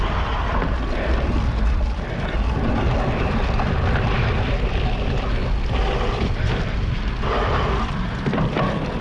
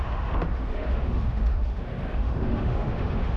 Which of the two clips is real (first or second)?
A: first